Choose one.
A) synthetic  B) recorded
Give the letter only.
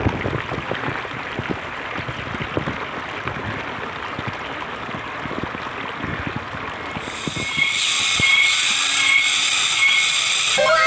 B